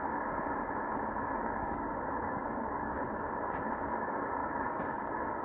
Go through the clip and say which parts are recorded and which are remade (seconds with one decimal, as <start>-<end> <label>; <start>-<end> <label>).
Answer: 0.0-1.4 recorded; 1.4-3.0 remade; 3.0-4.4 recorded; 4.4-5.0 remade; 5.0-5.4 recorded